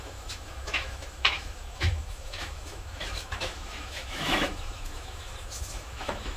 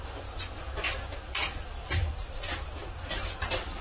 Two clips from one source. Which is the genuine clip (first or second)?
second